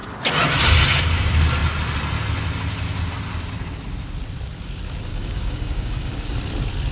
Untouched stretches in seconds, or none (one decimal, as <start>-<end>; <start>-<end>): 0.0-5.1; 6.3-6.9